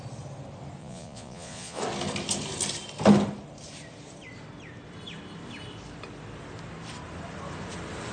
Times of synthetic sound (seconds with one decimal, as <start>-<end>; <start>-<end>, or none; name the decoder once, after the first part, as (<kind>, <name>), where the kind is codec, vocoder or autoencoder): 0.8-1.8 (vocoder, Vocos)